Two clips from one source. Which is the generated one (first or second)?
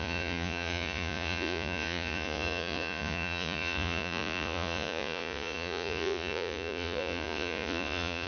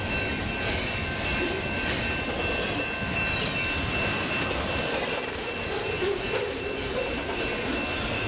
first